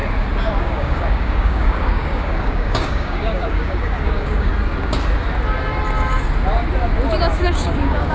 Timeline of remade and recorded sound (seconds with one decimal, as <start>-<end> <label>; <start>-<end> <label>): 0.0-0.6 recorded; 0.6-4.5 remade; 4.5-7.4 recorded; 7.4-8.1 remade